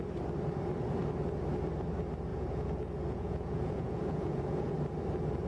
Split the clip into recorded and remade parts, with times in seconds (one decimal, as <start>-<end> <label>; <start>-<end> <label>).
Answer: 0.0-2.3 recorded; 2.3-4.7 remade; 4.7-5.5 recorded